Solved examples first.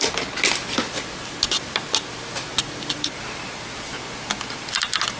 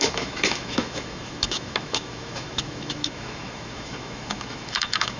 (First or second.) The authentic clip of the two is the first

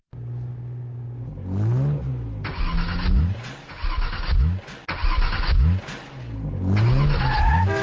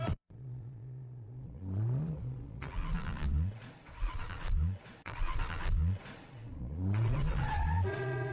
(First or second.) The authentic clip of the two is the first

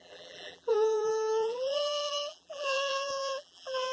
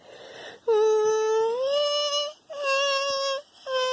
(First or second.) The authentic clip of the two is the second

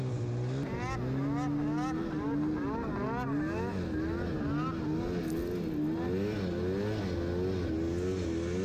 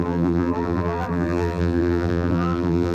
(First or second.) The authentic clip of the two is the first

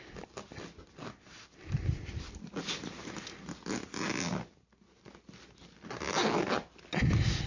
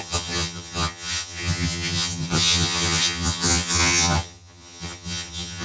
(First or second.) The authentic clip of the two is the first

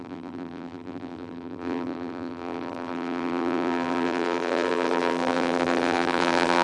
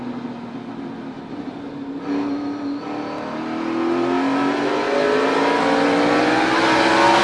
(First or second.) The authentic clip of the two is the second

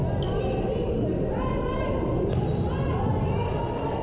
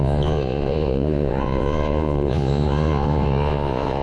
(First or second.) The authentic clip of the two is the first